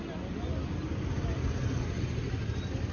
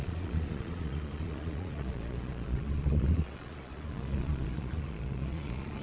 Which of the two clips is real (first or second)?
first